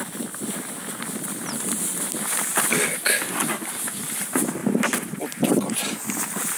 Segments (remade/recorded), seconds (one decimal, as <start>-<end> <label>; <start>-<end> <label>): 0.0-6.6 recorded